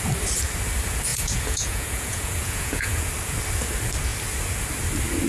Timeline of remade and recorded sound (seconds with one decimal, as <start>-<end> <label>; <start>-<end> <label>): 0.0-1.1 recorded; 1.1-3.1 remade; 3.1-5.3 recorded